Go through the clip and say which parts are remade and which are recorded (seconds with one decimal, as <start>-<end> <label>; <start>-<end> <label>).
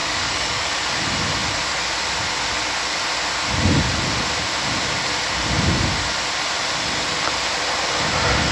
0.0-0.7 remade; 0.7-8.5 recorded